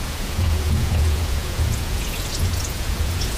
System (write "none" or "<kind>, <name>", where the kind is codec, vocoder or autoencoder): vocoder, Vocos